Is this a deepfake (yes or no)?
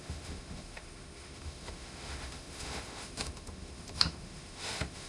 yes